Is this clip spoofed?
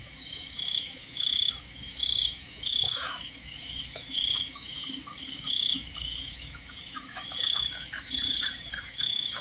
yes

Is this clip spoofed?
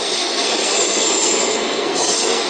yes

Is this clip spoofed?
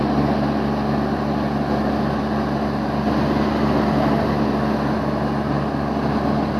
no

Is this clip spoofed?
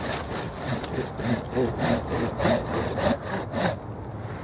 no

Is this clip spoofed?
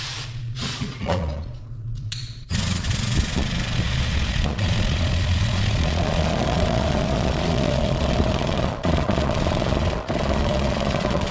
yes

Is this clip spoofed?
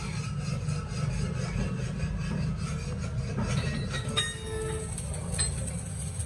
no